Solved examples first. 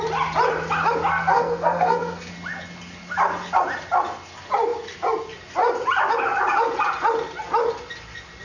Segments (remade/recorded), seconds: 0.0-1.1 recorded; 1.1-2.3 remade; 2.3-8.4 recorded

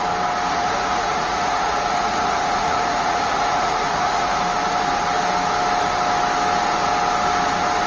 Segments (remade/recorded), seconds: 0.0-0.5 recorded; 0.5-4.4 remade; 4.4-7.9 recorded

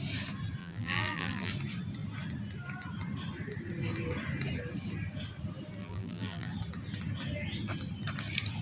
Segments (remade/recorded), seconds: 0.0-0.6 recorded; 0.6-1.5 remade; 1.5-5.8 recorded; 5.8-6.5 remade; 6.5-8.6 recorded

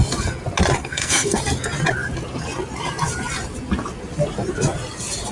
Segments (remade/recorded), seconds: 0.0-0.8 recorded; 0.8-1.4 remade; 1.4-5.3 recorded

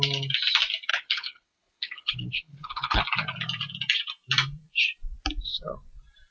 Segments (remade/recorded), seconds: 0.0-0.9 recorded; 0.9-3.0 remade; 3.0-6.3 recorded

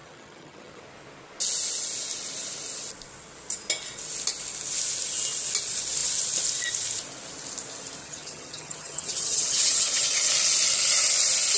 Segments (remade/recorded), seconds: 0.0-0.8 remade; 0.8-8.0 recorded; 8.0-10.3 remade; 10.3-11.6 recorded

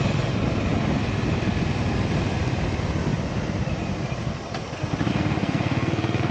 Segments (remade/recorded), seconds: 0.0-5.1 recorded; 5.1-6.3 remade

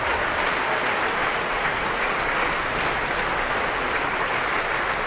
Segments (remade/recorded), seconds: 0.0-1.3 recorded; 1.3-2.1 remade; 2.1-5.1 recorded